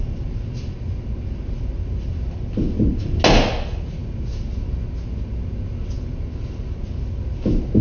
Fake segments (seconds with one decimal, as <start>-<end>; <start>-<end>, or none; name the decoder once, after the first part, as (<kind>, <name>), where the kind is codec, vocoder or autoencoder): none